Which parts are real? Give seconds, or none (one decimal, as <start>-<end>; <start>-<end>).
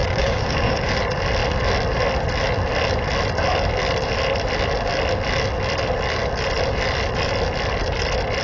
0.9-8.4